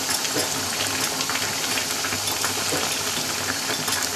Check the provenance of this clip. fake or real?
real